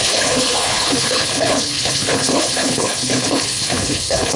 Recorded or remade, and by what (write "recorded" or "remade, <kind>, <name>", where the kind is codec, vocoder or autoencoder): remade, codec, HILCodec